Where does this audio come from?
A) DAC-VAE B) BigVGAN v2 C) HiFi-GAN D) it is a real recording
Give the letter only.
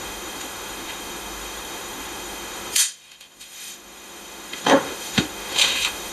A